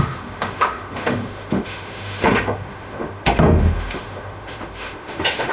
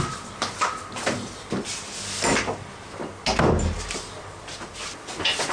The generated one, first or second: first